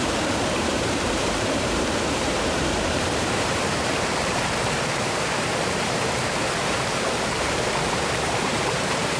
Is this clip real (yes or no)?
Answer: no